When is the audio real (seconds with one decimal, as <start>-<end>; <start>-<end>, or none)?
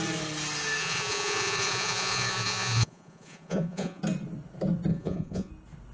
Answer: 0.0-0.8; 4.0-4.9; 5.5-5.9